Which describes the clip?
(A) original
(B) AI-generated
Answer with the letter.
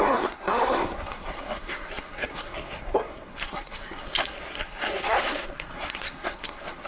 B